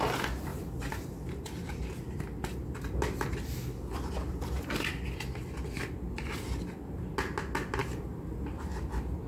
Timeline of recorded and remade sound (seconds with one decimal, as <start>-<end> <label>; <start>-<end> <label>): 0.0-0.5 recorded; 0.5-1.7 remade; 1.7-7.8 recorded; 7.8-8.4 remade; 8.4-9.3 recorded